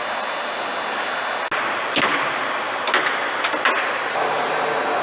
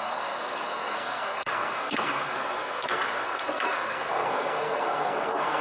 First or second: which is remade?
second